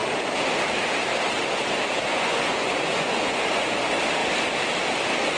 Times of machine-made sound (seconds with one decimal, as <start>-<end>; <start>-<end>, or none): 2.1-3.8